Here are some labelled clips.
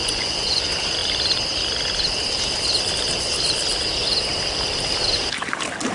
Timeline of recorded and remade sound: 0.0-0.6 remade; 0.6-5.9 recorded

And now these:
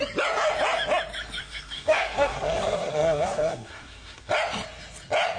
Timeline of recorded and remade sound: 0.0-1.4 recorded; 1.4-4.3 remade; 4.3-5.4 recorded

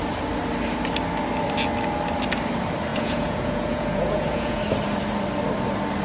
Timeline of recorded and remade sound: 0.0-2.9 recorded; 2.9-4.6 remade; 4.6-6.0 recorded

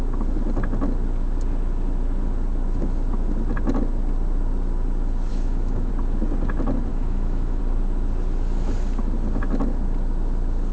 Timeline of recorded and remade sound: 0.0-5.3 recorded; 5.3-5.9 remade; 5.9-6.9 recorded; 6.9-7.6 remade; 7.6-10.7 recorded

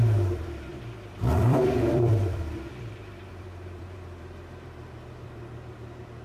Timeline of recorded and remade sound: 0.0-6.2 remade

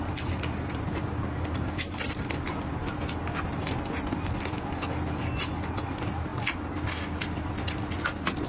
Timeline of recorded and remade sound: 0.0-8.5 recorded

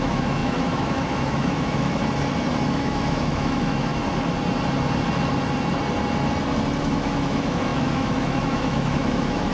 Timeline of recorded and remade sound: 0.0-2.0 remade; 2.0-2.6 recorded; 2.6-3.9 remade; 3.9-6.8 recorded; 6.8-9.5 remade